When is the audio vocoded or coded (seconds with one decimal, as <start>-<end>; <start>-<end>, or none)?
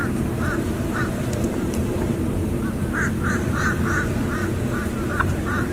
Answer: 2.4-3.8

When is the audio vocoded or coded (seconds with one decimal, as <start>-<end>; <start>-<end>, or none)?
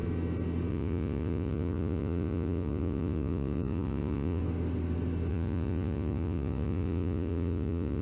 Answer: 0.7-4.4; 5.3-8.0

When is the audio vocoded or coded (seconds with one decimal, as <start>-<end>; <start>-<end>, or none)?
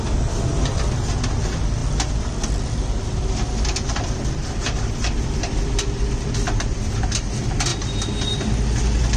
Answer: 0.0-7.7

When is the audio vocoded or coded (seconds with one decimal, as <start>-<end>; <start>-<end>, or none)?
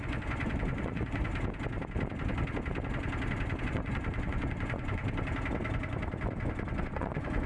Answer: 0.0-1.3; 3.6-5.0; 6.8-7.5